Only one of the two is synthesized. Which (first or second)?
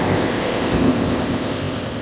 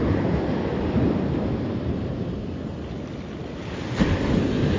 first